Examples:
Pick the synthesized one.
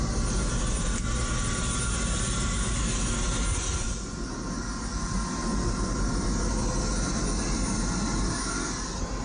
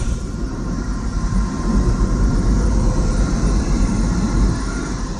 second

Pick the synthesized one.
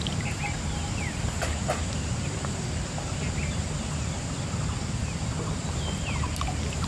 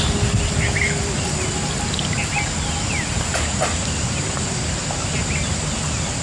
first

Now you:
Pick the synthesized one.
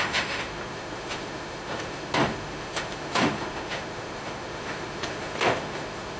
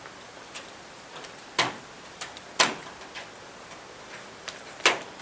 first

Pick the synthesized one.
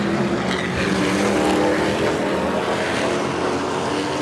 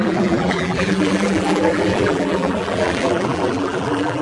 second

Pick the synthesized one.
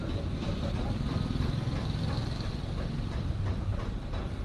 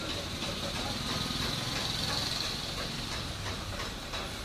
first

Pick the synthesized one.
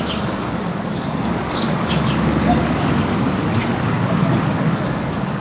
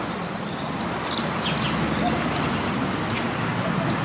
first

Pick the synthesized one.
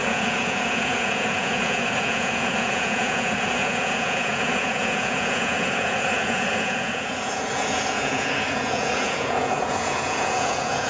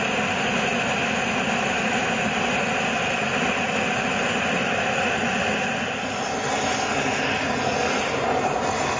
first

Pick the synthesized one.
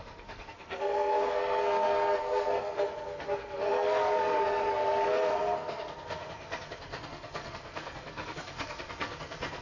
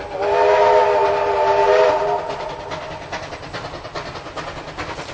first